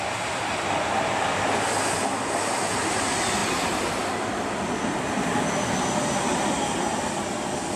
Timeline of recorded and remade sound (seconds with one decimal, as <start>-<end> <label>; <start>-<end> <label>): 0.0-7.8 recorded